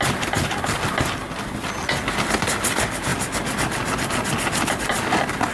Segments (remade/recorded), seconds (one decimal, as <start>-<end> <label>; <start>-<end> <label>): 0.0-5.5 recorded